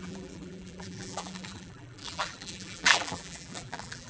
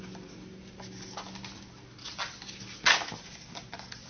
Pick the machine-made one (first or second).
first